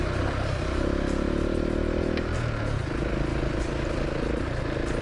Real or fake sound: real